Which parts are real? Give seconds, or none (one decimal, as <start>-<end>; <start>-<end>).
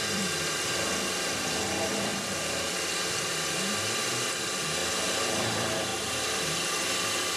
4.8-5.4; 5.9-7.4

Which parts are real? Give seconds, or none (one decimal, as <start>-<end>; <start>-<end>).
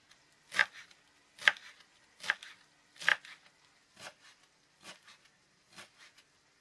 0.0-6.6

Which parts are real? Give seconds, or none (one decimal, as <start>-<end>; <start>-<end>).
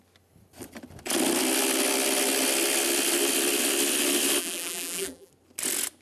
0.0-4.4; 5.3-6.0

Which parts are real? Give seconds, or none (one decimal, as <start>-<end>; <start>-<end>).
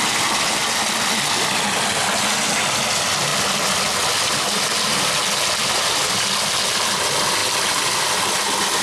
0.0-8.8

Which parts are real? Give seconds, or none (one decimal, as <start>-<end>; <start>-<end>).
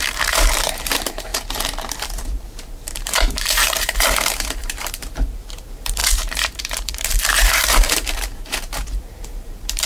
none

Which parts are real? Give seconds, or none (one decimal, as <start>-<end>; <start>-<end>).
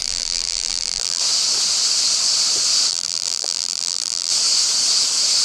1.2-2.9; 4.3-5.4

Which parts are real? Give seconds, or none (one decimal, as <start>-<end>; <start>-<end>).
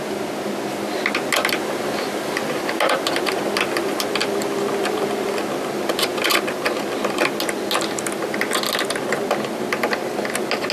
0.0-10.7